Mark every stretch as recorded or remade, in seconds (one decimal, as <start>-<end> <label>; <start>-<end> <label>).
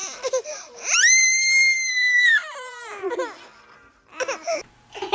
0.0-3.1 remade; 3.1-5.1 recorded